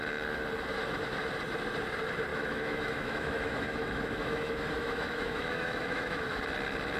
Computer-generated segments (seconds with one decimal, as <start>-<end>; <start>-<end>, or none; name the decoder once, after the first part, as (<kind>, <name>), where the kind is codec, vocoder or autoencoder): 2.3-6.4 (autoencoder, DAC-VAE)